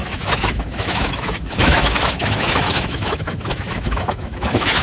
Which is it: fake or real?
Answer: fake